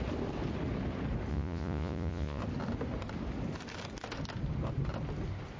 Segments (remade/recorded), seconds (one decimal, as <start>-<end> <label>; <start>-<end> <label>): 0.0-1.3 recorded; 1.3-2.4 remade; 2.4-5.6 recorded